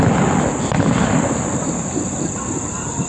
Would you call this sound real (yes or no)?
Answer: yes